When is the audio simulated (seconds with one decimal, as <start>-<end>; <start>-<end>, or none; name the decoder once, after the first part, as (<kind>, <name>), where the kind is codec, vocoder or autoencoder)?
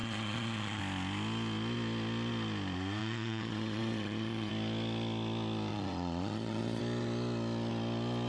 0.0-0.8 (vocoder, Vocos); 3.0-4.5; 5.7-6.8